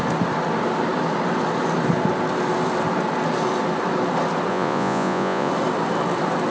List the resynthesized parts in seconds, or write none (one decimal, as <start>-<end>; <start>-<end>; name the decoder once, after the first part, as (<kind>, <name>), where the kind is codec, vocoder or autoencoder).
4.5-5.5 (vocoder, Vocos)